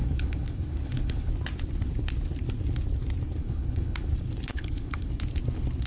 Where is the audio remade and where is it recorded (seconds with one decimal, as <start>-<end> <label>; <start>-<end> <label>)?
0.0-1.3 remade; 1.3-3.4 recorded; 3.4-4.1 remade; 4.1-4.5 recorded; 4.5-5.1 remade; 5.1-5.9 recorded